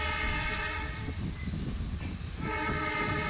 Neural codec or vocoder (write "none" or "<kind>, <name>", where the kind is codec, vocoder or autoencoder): none